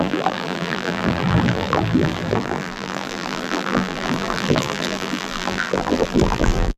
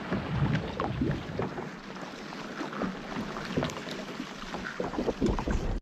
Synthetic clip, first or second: first